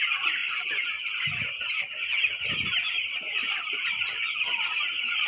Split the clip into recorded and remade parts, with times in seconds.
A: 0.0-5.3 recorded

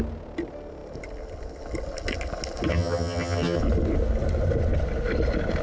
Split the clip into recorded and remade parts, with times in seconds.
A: 0.0-2.7 recorded; 2.7-3.6 remade; 3.6-5.6 recorded

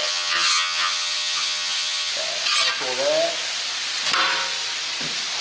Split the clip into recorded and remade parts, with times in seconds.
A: 0.0-2.1 remade; 2.1-5.4 recorded

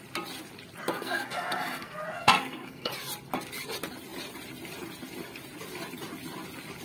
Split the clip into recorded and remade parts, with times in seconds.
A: 0.0-0.9 recorded; 0.9-2.9 remade; 2.9-6.8 recorded

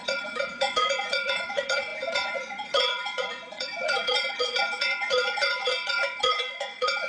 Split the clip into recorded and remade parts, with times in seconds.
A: 0.0-7.1 remade

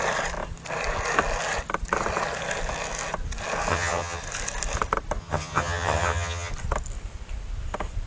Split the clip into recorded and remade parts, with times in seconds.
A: 0.0-3.7 recorded; 3.7-4.2 remade; 4.2-5.2 recorded; 5.2-6.5 remade; 6.5-8.1 recorded

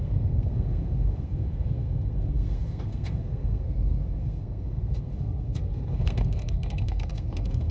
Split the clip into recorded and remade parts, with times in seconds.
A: 0.0-7.7 remade